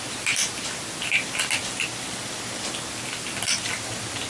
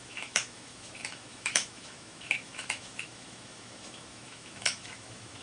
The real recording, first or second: first